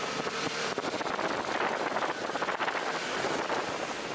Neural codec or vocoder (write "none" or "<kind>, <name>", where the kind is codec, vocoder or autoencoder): none